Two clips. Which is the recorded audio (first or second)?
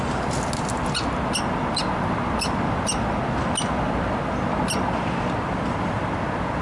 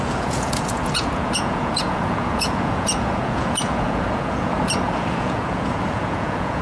first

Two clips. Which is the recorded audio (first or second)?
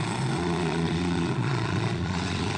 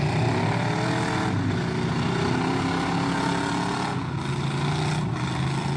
second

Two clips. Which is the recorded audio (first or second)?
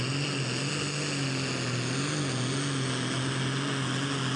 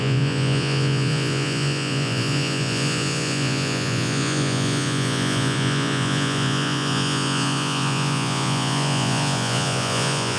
first